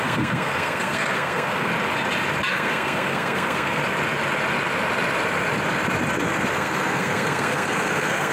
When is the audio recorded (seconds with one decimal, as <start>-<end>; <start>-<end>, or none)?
1.7-2.5; 3.8-6.5